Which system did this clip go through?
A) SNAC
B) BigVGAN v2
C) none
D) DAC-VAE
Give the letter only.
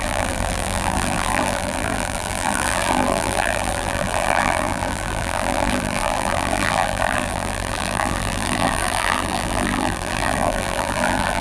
B